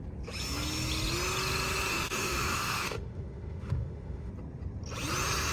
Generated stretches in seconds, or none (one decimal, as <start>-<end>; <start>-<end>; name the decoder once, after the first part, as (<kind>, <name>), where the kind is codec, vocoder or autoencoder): 1.9-4.3 (autoencoder, DAC-VAE)